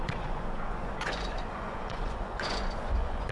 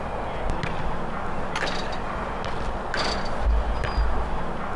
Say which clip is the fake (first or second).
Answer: first